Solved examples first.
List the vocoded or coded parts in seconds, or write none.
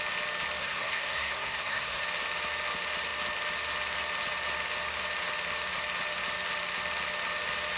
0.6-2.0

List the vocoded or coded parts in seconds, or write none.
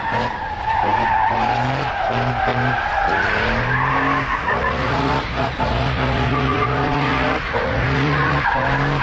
4.3-8.5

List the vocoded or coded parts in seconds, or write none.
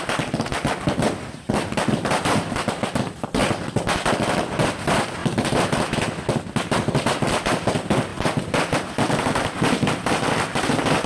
0.0-3.4; 4.3-11.1